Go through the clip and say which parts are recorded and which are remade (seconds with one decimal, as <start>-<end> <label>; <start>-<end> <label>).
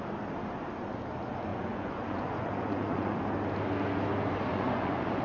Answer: 0.0-1.5 recorded; 1.5-3.2 remade; 3.2-4.5 recorded; 4.5-5.2 remade